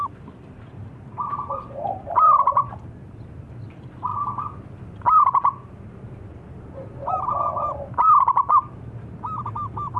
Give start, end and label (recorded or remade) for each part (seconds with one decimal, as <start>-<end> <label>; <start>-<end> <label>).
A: 0.0-4.1 remade; 4.1-5.2 recorded; 5.2-10.0 remade